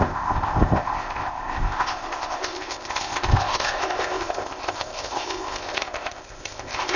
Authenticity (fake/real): fake